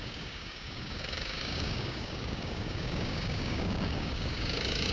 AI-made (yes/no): yes